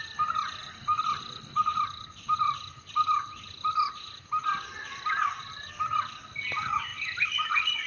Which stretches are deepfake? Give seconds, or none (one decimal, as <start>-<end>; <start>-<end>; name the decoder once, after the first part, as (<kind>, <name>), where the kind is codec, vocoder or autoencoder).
none